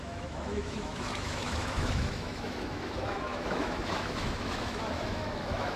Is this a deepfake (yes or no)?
yes